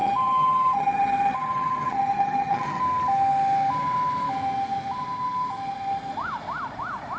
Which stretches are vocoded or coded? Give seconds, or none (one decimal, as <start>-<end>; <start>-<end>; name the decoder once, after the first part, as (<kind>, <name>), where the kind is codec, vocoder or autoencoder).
0.0-2.8 (vocoder, HiFi-GAN)